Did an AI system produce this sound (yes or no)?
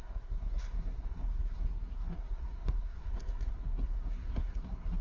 yes